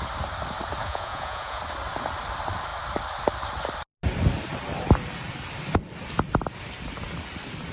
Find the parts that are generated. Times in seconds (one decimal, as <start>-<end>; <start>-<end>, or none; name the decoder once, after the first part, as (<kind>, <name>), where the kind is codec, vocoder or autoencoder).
0.8-1.6 (vocoder, Vocos)